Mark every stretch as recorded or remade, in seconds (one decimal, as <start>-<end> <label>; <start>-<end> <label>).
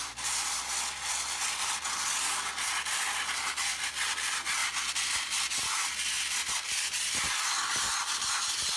0.0-4.6 remade; 4.6-5.5 recorded; 5.5-8.8 remade